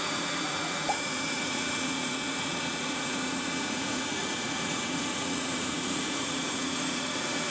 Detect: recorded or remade remade